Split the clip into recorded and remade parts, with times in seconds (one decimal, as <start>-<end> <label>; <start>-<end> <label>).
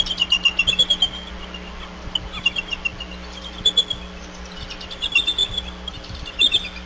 0.0-6.9 recorded